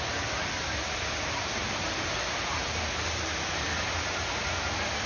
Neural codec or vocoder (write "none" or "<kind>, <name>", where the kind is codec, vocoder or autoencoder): none